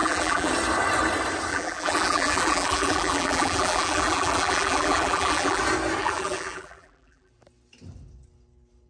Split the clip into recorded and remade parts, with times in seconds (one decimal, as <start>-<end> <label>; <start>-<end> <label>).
0.0-0.5 remade; 0.5-1.5 recorded; 1.5-5.6 remade; 5.6-6.0 recorded; 6.0-7.3 remade; 7.3-8.9 recorded